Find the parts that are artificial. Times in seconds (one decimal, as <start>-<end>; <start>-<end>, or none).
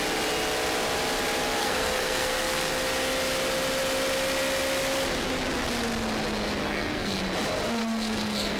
1.6-2.7; 6.6-7.2; 7.8-8.6